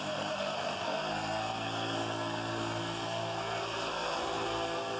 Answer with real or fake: fake